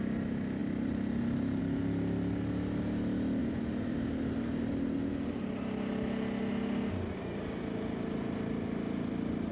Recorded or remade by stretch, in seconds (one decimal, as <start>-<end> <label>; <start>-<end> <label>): 0.0-3.4 recorded; 3.4-5.4 remade; 5.4-9.5 recorded